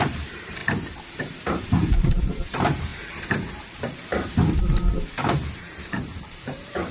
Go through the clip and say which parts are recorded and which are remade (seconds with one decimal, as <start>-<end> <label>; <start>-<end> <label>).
0.0-0.6 remade; 0.6-1.2 recorded; 1.2-2.9 remade; 2.9-3.6 recorded; 3.6-4.1 remade; 4.1-4.9 recorded; 4.9-6.9 remade